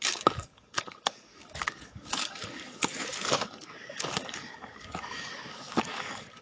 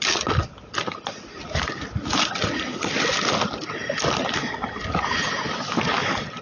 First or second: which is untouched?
second